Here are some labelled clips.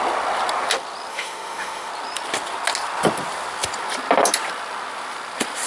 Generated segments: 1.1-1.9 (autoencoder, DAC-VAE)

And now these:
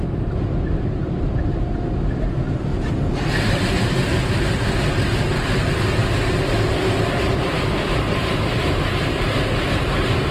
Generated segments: none